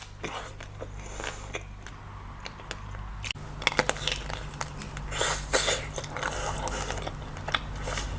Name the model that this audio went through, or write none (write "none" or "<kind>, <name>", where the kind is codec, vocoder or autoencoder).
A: none